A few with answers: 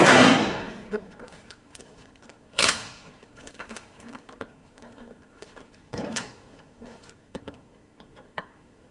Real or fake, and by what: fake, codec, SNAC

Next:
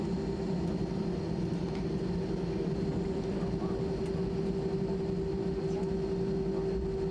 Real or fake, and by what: real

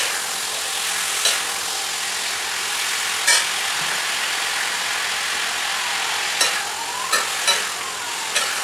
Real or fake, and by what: real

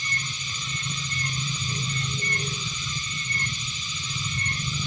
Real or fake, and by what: fake, vocoder, BigVGAN v2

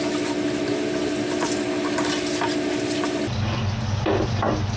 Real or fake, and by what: real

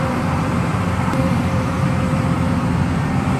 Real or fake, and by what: fake, vocoder, BigVGAN v2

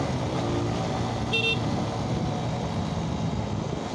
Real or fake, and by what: real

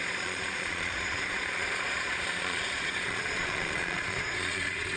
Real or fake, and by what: fake, vocoder, Vocos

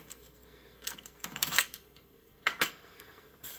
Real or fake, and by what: fake, codec, SNAC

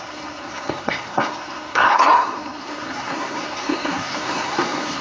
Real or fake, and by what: fake, codec, SNAC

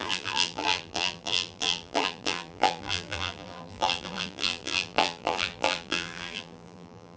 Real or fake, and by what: fake, vocoder, BigVGAN v2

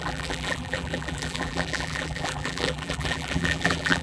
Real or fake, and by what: fake, vocoder, BigVGAN v2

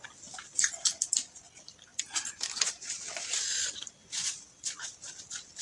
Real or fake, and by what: real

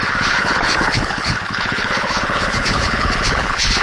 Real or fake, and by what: fake, codec, HILCodec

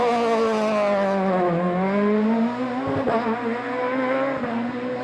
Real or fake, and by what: real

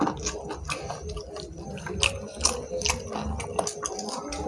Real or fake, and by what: real